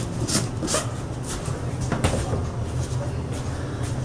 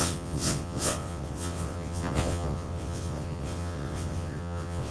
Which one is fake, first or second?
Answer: second